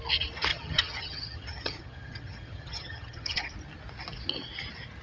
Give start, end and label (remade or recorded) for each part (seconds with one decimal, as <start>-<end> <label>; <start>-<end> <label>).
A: 0.0-0.5 recorded; 0.5-3.5 remade; 3.5-5.0 recorded